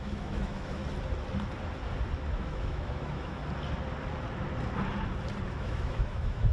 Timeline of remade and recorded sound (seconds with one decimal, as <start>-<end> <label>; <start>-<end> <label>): 0.0-0.8 remade; 0.8-2.3 recorded; 2.3-3.4 remade; 3.4-5.5 recorded; 5.5-6.5 remade